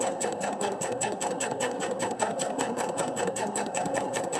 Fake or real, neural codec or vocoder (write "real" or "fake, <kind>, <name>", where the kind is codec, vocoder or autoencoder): fake, codec, SNAC